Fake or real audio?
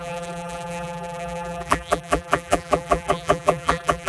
fake